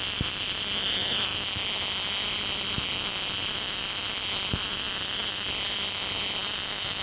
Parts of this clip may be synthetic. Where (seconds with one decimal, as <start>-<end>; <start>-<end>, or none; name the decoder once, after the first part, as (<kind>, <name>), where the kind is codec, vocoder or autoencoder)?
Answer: none